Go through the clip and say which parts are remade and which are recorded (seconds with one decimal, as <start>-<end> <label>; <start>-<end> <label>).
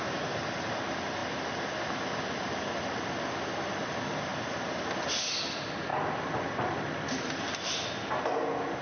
0.0-8.8 recorded